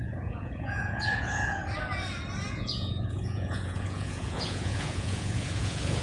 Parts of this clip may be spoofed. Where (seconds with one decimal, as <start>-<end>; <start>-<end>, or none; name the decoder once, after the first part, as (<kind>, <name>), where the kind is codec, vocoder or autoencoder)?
0.0-1.6 (vocoder, Vocos); 2.5-6.0